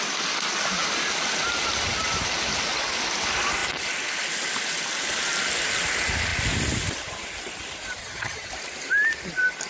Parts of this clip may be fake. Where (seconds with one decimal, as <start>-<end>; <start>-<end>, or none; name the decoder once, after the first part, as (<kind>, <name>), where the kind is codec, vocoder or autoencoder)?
8.0-8.5 (vocoder, HiFi-GAN)